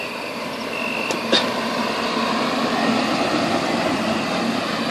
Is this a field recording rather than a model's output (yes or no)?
yes